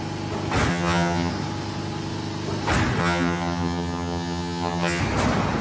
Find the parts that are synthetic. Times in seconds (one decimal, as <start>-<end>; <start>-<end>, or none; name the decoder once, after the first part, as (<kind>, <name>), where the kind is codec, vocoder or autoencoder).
0.7-1.3 (vocoder, HiFi-GAN); 3.0-5.0